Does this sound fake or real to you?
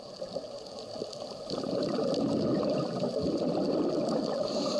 real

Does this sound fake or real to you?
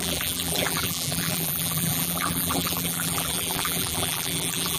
fake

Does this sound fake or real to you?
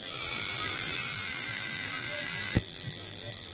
fake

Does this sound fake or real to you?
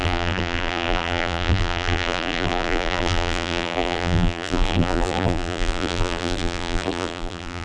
fake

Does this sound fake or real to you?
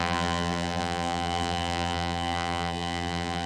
fake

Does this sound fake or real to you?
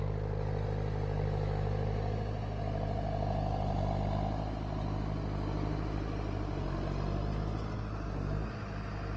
real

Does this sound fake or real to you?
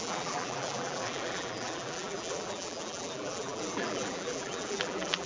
fake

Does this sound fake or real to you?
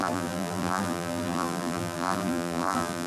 fake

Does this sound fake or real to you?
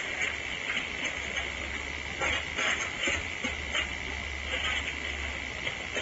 real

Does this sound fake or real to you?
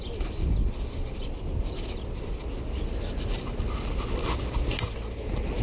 real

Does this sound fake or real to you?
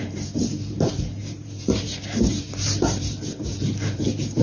fake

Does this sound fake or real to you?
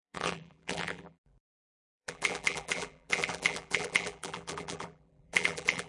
fake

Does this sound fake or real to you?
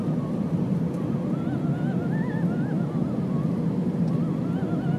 real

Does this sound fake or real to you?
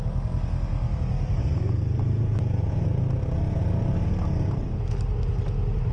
real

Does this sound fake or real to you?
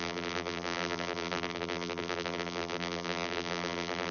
fake